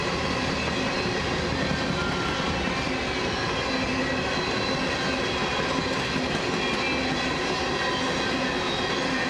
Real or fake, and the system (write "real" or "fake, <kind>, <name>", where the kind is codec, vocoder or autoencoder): real